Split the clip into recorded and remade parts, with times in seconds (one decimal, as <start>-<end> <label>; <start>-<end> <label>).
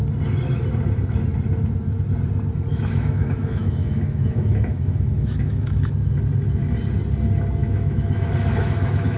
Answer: 0.0-2.7 recorded; 2.7-5.9 remade; 5.9-7.6 recorded; 7.6-9.2 remade